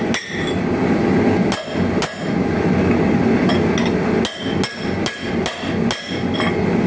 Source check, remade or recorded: recorded